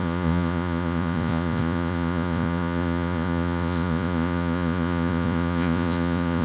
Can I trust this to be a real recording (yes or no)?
no